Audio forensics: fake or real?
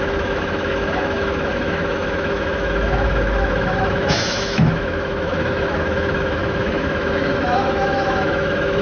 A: fake